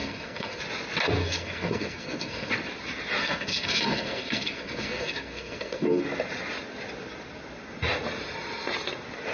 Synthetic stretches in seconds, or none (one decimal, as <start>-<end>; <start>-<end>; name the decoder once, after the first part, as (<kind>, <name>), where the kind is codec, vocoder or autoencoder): 0.0-0.6 (codec, SNAC); 1.2-2.5; 3.2-6.0